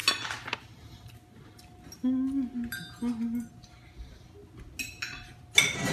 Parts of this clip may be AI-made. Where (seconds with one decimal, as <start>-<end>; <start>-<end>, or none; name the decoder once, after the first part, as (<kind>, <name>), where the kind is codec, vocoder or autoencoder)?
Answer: none